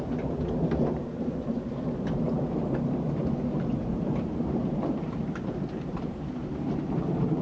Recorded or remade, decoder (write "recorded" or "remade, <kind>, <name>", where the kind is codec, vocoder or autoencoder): remade, vocoder, BigVGAN v2